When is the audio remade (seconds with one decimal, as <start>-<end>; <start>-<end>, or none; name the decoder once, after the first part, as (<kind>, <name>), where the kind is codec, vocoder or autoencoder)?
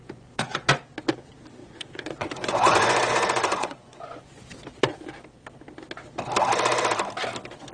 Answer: 0.0-0.7 (vocoder, Vocos); 1.6-4.4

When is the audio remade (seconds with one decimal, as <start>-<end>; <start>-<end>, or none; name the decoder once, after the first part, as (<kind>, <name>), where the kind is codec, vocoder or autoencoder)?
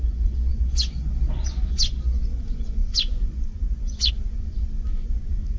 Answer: 0.0-5.6 (vocoder, Vocos)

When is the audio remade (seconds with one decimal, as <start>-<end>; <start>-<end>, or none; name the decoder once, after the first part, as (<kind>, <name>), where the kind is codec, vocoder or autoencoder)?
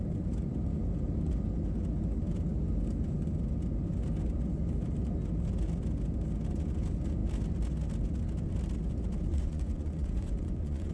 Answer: 9.3-10.9 (vocoder, Vocos)